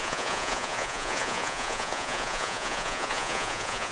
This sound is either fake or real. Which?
fake